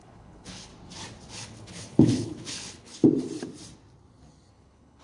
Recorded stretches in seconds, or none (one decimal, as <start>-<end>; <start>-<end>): 0.7-1.3; 3.0-4.5